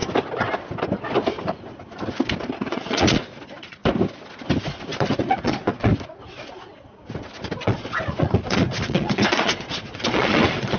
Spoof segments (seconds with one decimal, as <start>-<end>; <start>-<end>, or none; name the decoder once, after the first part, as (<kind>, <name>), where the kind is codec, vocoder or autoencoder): 2.7-3.8 (vocoder, Vocos); 5.0-5.9; 7.6-10.8